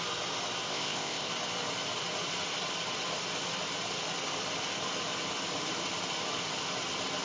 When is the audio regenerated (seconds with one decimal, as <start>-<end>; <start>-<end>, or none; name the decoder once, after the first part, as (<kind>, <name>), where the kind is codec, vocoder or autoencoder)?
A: 0.7-1.3 (codec, ZipCodec)